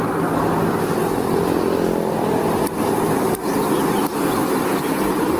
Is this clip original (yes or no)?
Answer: yes